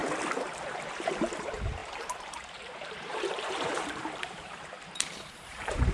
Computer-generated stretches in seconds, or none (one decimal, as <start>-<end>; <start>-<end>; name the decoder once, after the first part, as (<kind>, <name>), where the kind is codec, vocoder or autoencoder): 0.7-5.9 (vocoder, BigVGAN v2)